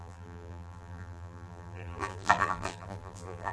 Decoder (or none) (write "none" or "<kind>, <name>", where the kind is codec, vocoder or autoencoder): vocoder, BigVGAN v2